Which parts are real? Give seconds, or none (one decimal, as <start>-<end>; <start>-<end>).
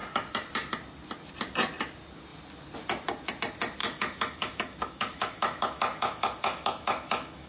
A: 0.0-3.8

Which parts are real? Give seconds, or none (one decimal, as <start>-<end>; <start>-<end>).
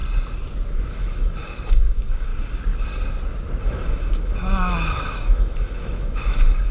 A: 0.0-0.9; 2.3-3.6